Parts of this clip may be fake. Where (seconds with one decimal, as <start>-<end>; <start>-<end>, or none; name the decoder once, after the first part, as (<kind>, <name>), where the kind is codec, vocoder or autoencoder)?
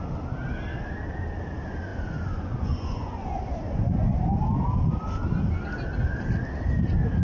1.9-3.4 (vocoder, Vocos)